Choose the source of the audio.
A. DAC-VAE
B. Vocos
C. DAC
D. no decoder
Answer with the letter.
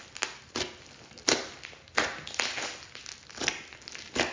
D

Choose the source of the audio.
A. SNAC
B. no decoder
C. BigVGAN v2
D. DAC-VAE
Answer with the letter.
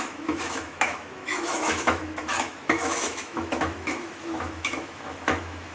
D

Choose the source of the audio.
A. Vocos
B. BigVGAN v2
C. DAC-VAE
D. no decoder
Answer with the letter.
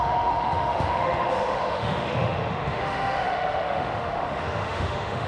C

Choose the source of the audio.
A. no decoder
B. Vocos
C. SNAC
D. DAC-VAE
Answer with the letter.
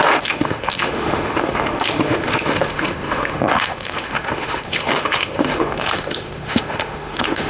D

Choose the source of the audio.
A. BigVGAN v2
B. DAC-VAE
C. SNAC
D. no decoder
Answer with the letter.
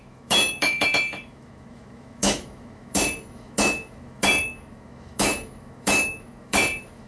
B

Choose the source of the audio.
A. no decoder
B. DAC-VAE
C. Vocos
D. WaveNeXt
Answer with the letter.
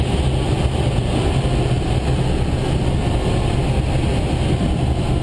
A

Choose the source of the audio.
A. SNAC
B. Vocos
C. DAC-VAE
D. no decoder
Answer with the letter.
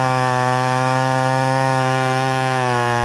C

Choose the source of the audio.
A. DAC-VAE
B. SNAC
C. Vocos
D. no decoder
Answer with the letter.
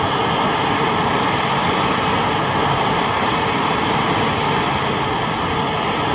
D